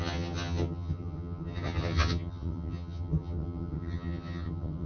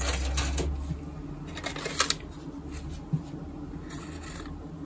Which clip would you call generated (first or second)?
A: first